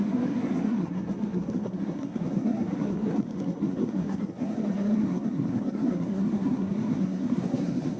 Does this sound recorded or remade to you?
remade